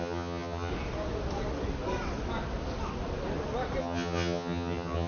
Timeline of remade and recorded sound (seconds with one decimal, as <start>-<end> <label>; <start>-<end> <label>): 0.0-0.7 remade; 0.7-3.8 recorded; 3.8-5.1 remade